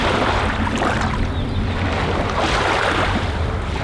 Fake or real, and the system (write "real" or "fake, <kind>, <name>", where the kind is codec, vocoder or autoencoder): real